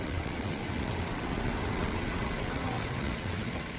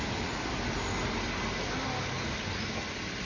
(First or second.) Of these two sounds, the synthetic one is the first